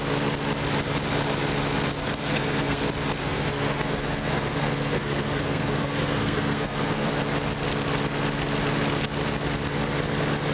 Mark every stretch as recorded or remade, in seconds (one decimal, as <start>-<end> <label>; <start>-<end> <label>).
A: 0.0-2.0 recorded; 2.0-2.8 remade; 2.8-3.2 recorded; 3.2-7.1 remade; 7.1-10.5 recorded